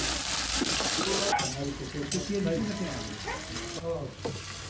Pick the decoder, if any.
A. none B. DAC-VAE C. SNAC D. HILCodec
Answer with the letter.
A